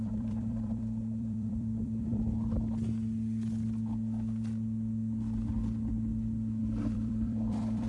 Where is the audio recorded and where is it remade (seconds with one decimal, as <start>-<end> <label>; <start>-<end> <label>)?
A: 0.0-2.2 remade; 2.2-6.6 recorded; 6.6-7.9 remade